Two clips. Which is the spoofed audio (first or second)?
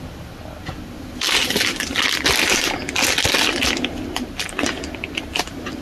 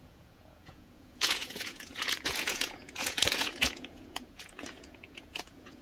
second